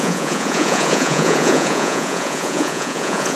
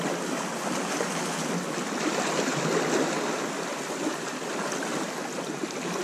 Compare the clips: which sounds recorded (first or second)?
second